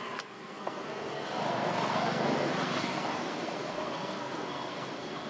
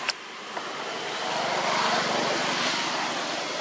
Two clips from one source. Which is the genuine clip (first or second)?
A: second